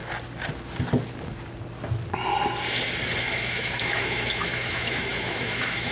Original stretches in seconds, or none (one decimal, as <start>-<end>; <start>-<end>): 0.0-3.5